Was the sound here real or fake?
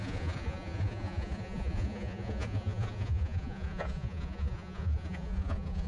fake